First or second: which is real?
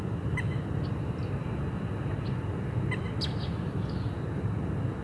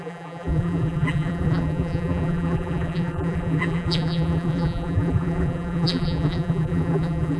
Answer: first